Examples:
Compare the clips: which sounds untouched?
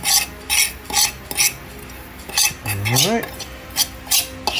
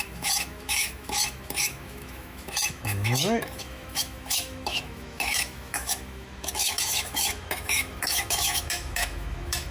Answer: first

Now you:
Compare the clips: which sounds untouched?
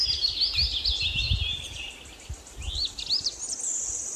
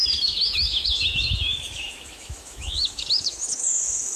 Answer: first